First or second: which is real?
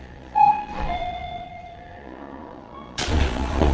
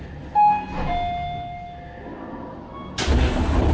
second